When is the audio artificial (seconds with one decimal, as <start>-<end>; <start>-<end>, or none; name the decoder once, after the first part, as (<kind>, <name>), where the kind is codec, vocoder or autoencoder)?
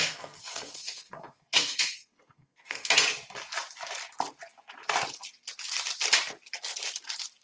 0.0-2.9 (codec, SNAC)